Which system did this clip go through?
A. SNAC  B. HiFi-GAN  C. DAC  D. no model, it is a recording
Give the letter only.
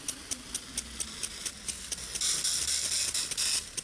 D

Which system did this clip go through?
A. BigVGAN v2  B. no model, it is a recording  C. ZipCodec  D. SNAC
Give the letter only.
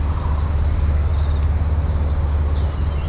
B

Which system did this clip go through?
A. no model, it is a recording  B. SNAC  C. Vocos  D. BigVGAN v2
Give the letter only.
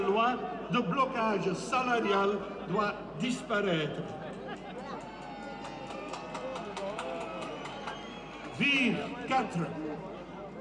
A